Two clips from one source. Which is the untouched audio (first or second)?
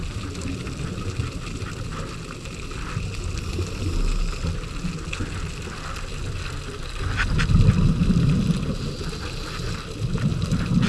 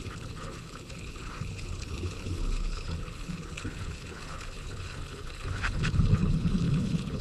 first